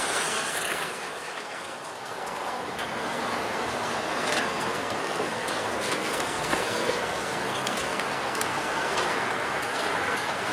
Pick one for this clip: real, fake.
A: fake